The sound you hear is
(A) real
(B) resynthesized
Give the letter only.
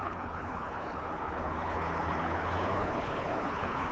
B